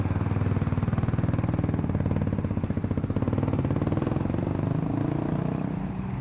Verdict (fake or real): real